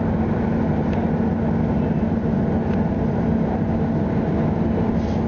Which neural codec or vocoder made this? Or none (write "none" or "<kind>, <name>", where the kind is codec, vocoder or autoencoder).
none